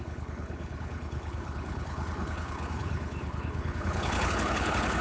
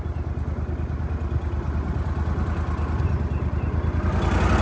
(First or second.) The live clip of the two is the second